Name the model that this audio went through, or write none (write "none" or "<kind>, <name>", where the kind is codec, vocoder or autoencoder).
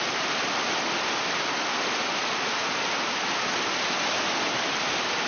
none